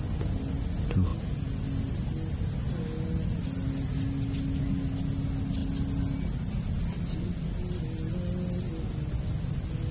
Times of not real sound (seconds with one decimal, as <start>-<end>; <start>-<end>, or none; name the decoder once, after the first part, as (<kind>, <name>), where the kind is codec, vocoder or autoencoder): none